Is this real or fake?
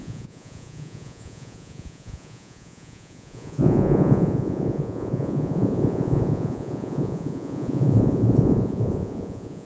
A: fake